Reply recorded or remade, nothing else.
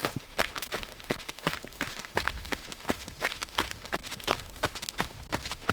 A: remade